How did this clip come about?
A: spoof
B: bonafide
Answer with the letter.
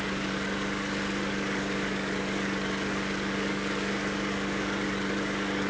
A